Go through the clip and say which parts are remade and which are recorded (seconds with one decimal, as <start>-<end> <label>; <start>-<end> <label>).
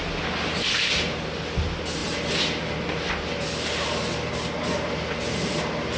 0.0-6.0 recorded